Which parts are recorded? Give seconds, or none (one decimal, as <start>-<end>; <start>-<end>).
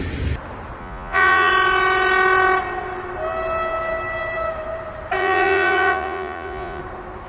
0.0-0.8; 1.5-5.2; 6.8-7.3